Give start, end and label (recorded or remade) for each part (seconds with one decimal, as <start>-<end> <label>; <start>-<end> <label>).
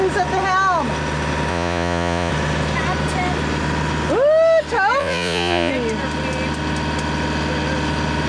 0.0-1.5 recorded; 1.5-2.3 remade; 2.3-5.0 recorded; 5.0-5.7 remade; 5.7-8.3 recorded